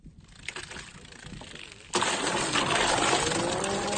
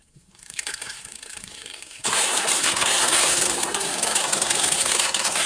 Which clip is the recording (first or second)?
first